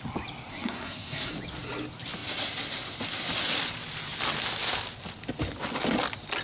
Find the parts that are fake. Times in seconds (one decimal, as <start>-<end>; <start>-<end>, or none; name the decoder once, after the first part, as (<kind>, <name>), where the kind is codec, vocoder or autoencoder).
0.5-1.3 (codec, SNAC)